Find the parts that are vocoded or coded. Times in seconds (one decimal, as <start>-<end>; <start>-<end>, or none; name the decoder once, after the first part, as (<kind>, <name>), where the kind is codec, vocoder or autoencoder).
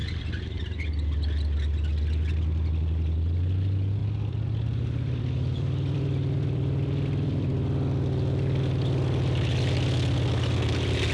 0.0-0.6 (vocoder, BigVGAN v2); 4.0-7.5